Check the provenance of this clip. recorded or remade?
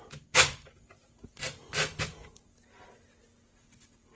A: recorded